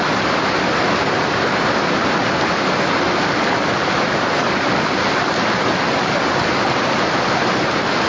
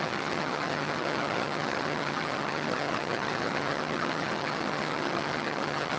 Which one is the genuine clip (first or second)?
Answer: first